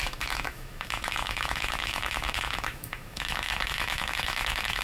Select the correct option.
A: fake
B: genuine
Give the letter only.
A